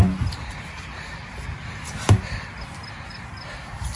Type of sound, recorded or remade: recorded